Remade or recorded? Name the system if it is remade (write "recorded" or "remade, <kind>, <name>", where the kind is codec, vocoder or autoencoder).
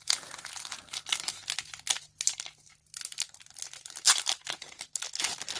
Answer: recorded